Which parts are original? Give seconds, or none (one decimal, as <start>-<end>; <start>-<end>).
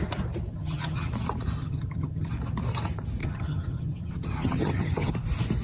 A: 0.0-0.5; 1.1-1.6; 2.3-3.2; 5.1-5.6